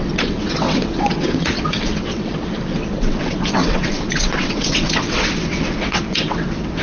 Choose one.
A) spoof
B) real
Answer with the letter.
A